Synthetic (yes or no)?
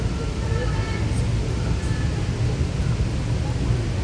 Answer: no